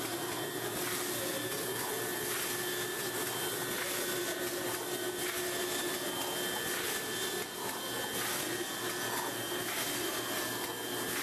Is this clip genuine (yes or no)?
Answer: yes